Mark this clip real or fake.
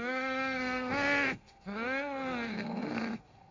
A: fake